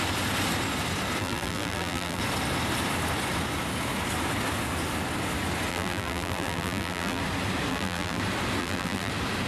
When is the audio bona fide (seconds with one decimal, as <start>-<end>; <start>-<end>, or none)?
0.0-1.2; 2.2-5.7; 7.2-7.7; 8.2-8.6; 9.1-9.5